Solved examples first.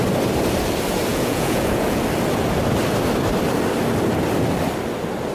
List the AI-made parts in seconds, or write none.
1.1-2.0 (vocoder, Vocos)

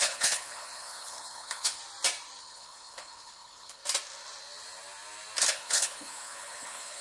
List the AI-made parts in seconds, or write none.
0.0-1.8 (codec, HILCodec); 2.4-3.8; 5.5-7.0

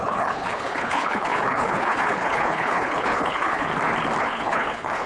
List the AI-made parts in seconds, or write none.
0.0-3.7 (codec, HILCodec); 4.2-5.1

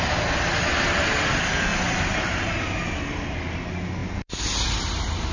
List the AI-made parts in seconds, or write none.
1.7-2.5 (vocoder, BigVGAN v2); 4.0-5.3

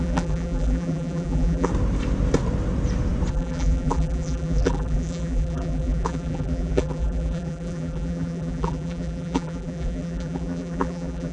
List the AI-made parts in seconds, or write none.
0.0-1.7 (vocoder, BigVGAN v2); 3.3-11.3

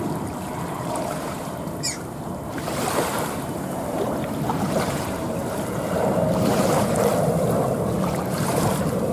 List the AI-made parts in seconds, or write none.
0.0-5.4 (vocoder, BigVGAN v2); 5.9-7.1; 8.0-9.1

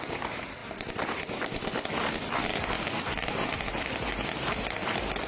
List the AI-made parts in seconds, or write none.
none